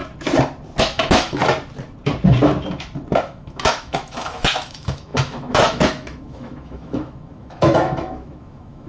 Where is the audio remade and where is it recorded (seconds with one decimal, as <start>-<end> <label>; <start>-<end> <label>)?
0.0-0.8 recorded; 0.8-1.4 remade; 1.4-3.2 recorded; 3.2-8.9 remade